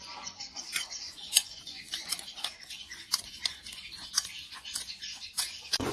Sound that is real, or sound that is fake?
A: fake